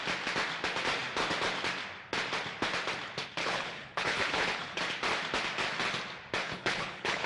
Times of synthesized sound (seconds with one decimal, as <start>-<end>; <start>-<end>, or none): 3.4-4.8; 6.4-7.3